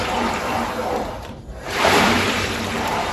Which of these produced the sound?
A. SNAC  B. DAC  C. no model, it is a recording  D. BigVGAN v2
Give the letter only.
D